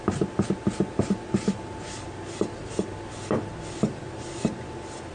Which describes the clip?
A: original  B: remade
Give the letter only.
A